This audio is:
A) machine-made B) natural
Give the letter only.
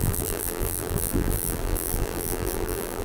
A